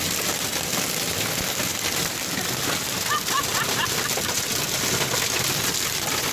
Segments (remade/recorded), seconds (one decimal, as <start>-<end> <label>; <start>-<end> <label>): 0.0-6.3 recorded